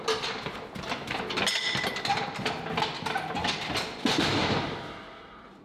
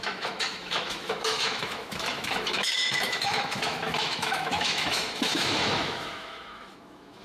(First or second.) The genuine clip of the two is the first